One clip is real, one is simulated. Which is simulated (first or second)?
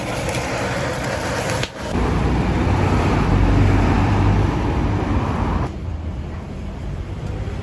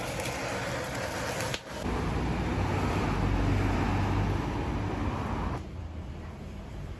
first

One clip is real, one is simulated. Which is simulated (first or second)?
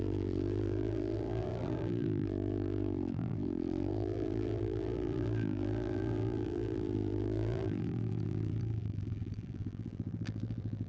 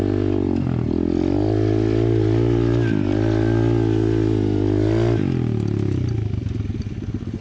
first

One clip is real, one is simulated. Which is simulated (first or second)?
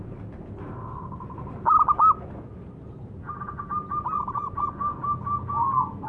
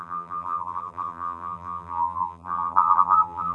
second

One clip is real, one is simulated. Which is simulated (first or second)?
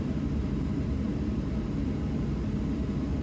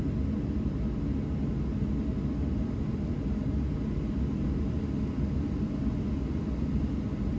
first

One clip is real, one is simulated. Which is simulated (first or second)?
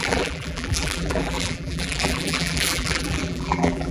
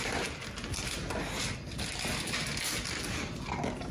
first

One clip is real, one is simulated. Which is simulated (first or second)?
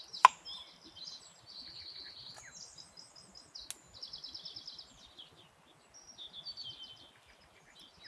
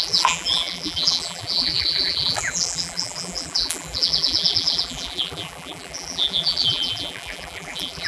second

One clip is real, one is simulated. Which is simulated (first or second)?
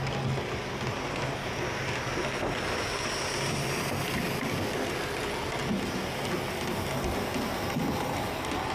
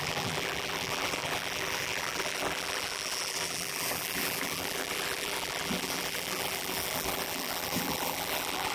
second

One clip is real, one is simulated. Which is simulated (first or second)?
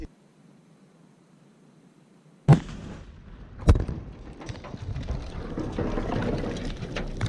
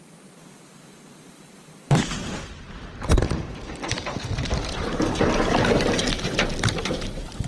second